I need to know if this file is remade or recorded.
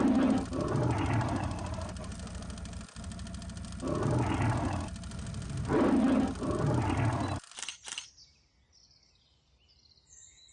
recorded